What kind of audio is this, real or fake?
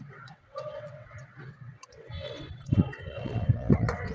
fake